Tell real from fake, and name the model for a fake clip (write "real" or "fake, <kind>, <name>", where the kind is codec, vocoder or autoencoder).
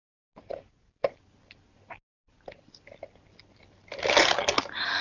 real